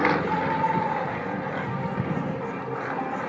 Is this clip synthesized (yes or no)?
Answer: no